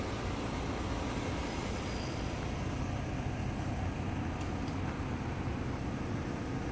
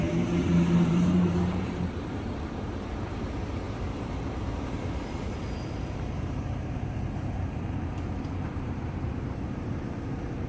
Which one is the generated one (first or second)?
second